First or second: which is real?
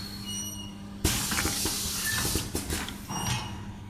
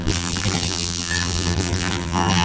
first